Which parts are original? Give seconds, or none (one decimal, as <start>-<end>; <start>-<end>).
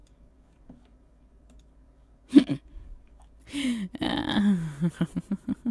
3.4-5.7